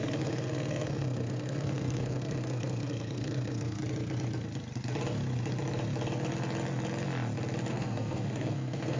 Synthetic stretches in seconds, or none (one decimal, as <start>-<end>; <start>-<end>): 0.0-3.8; 7.7-9.0